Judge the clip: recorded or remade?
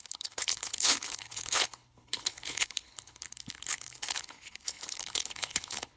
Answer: remade